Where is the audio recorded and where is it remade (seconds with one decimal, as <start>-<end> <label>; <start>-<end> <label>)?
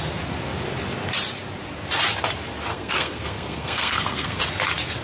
0.0-2.7 recorded; 2.7-4.4 remade; 4.4-5.0 recorded